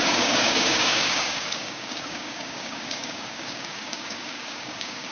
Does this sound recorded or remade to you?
remade